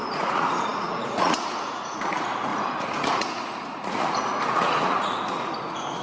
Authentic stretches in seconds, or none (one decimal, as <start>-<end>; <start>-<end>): none